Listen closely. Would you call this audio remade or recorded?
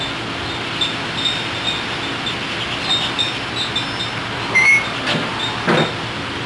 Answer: recorded